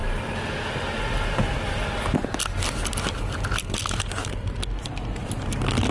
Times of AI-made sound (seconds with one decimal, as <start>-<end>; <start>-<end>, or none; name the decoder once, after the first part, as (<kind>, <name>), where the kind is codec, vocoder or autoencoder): none